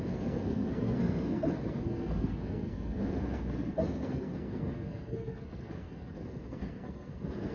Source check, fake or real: fake